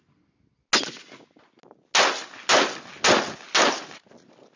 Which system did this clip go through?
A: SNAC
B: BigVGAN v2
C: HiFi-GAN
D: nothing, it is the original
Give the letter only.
D